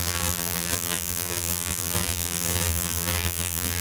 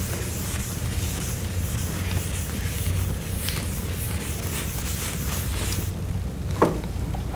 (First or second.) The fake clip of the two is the first